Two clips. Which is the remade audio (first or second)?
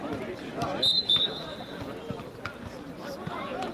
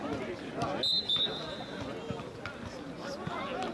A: first